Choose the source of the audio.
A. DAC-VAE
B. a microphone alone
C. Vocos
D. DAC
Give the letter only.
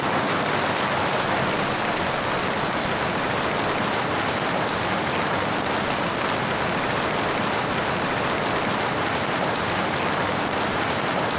B